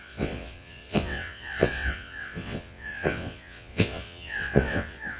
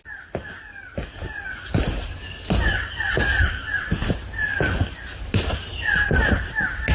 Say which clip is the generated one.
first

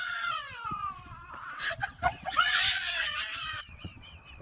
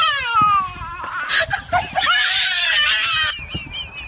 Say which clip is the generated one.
first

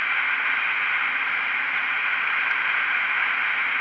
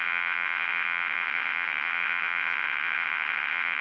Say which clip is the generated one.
second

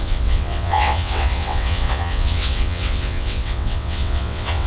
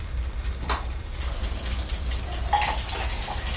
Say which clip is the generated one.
first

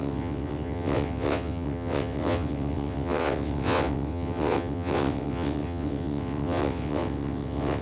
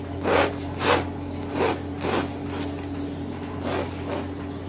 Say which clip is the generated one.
first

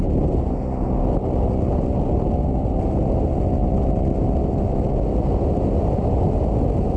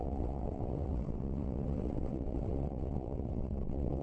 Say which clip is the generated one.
second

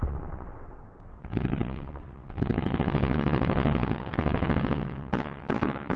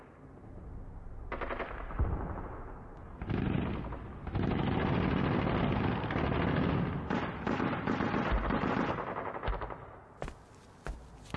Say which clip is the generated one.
first